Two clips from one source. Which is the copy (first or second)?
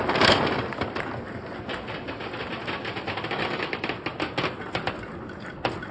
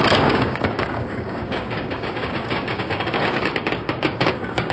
second